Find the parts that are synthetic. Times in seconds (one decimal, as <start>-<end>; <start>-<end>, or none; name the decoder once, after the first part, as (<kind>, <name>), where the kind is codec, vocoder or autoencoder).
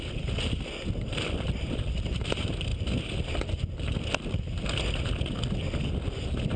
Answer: none